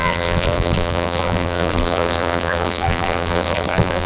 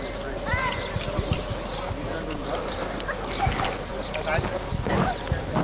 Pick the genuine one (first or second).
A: second